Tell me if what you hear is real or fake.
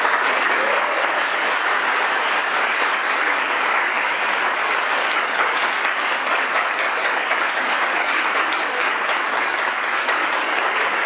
fake